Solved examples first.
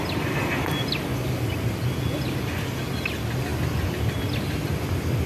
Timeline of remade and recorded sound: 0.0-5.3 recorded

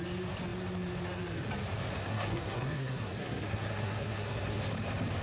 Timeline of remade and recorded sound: 0.0-2.0 recorded; 2.0-4.6 remade; 4.6-5.2 recorded